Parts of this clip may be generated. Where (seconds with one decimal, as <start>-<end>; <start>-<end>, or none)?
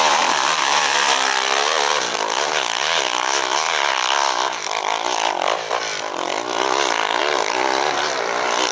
0.0-1.9; 3.9-6.3; 7.2-8.7